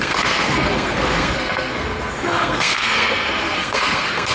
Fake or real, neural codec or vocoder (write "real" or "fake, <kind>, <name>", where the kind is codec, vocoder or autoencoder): fake, codec, SNAC